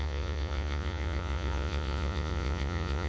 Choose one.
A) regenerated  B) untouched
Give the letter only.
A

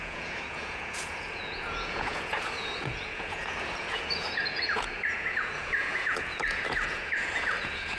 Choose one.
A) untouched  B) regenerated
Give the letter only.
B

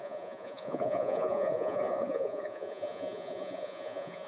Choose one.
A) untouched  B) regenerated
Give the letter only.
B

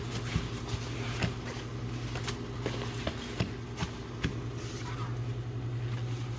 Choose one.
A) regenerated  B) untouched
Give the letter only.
B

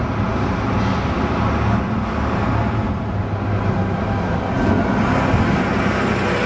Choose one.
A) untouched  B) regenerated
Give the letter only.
A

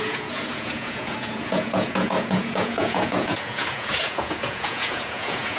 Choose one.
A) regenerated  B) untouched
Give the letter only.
A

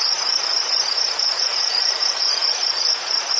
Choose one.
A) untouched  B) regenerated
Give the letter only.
B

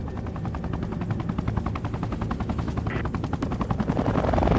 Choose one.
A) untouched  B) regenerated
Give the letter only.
A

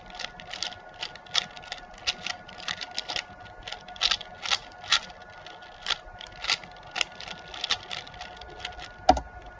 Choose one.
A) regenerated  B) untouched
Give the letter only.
B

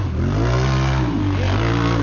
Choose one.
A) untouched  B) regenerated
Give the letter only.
A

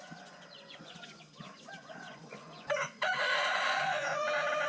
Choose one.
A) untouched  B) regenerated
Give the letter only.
B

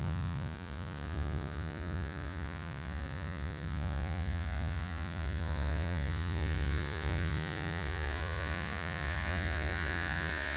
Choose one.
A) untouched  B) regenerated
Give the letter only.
B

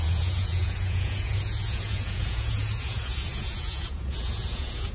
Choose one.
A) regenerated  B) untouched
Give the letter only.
A